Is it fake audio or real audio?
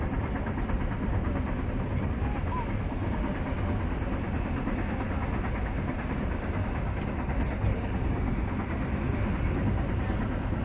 real